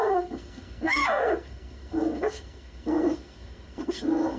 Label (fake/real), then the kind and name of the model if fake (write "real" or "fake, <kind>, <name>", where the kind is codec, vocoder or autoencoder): fake, codec, SNAC